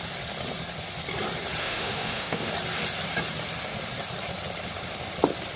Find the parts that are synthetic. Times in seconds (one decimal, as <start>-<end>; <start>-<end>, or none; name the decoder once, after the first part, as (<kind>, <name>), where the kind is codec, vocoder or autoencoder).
1.6-2.5 (autoencoder, DAC-VAE)